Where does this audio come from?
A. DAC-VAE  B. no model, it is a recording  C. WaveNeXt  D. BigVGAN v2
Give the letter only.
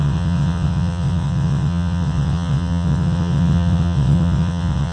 C